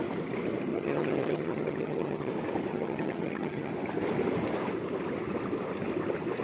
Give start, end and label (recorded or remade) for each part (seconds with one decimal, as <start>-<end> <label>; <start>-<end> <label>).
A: 0.0-0.7 recorded; 0.7-2.3 remade; 2.3-2.7 recorded; 2.7-3.7 remade; 3.7-6.4 recorded